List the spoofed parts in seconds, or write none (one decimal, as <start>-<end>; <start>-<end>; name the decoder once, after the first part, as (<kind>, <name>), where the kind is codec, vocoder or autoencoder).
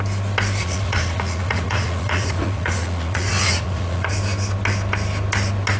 0.6-4.1 (vocoder, Vocos)